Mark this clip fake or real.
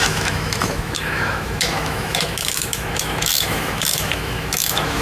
fake